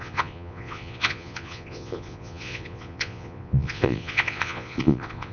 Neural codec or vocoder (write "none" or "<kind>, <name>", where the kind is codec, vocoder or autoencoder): vocoder, Vocos